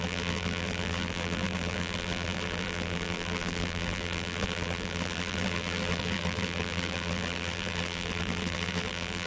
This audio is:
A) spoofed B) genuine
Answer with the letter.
A